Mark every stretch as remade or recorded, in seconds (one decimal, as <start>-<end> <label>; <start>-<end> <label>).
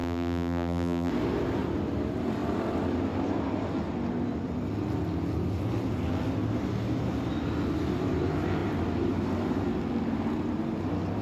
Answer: 0.0-1.1 remade; 1.1-11.2 recorded